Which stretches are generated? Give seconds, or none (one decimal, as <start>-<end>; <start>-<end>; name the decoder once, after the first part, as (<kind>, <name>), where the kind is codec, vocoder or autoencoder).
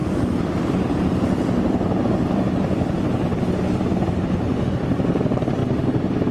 none